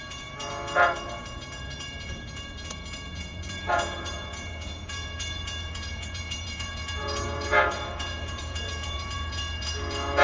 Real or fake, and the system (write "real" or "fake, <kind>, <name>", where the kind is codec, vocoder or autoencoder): fake, vocoder, Vocos